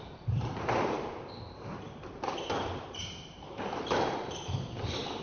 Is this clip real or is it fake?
fake